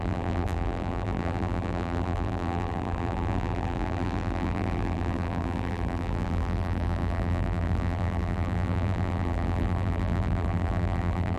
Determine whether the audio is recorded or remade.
remade